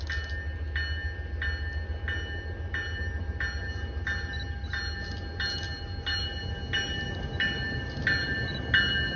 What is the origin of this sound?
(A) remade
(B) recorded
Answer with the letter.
B